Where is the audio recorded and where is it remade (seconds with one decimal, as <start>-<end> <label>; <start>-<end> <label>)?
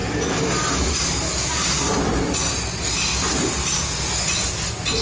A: 0.0-5.0 recorded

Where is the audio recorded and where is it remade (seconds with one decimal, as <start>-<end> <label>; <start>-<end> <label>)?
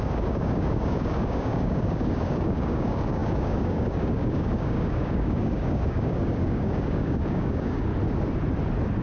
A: 0.0-7.9 remade; 7.9-9.0 recorded